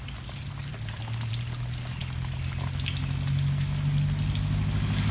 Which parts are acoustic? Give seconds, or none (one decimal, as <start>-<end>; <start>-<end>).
0.0-5.1